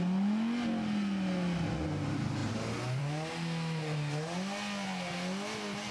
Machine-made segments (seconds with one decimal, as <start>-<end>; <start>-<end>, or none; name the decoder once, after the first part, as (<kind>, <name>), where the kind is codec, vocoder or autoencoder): none